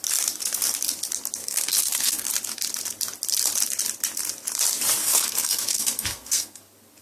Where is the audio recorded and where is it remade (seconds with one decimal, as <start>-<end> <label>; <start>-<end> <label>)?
0.0-1.4 recorded; 1.4-2.3 remade; 2.3-5.0 recorded; 5.0-6.6 remade; 6.6-7.0 recorded